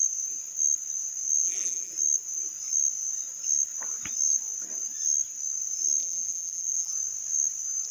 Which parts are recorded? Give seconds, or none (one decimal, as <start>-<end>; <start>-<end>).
0.0-1.4; 1.9-6.0; 6.9-7.9